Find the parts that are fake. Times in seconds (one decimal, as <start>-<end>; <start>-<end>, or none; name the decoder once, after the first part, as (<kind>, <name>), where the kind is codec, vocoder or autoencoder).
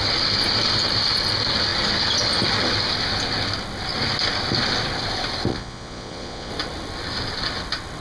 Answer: 5.5-6.5 (vocoder, Vocos)